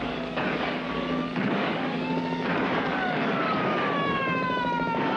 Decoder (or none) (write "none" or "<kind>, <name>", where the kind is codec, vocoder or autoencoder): codec, DAC